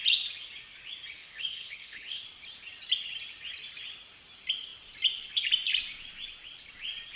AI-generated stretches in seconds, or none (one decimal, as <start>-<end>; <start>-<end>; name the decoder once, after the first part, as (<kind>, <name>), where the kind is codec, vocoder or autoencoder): 1.2-2.2 (codec, HILCodec)